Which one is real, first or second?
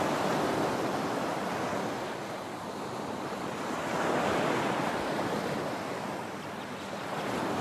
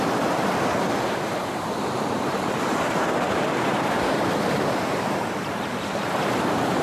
first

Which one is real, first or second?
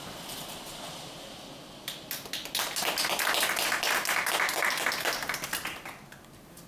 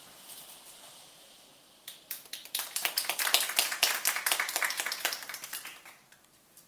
first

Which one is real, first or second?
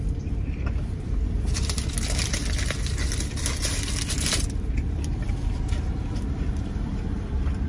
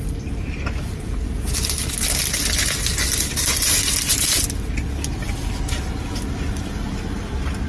second